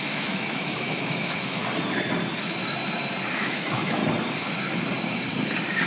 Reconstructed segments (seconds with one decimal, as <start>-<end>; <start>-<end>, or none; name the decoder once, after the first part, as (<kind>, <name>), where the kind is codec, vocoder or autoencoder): 0.0-1.6 (autoencoder, DAC-VAE); 3.3-4.0